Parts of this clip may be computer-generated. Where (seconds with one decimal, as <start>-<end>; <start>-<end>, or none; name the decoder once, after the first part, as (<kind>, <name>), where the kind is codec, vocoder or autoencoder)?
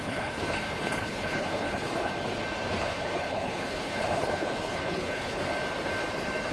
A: 0.0-2.1 (codec, HILCodec); 2.8-5.4